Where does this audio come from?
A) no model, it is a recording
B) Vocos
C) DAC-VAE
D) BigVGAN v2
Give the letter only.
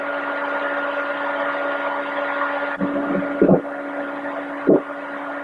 A